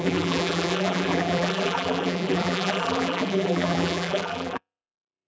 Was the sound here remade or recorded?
remade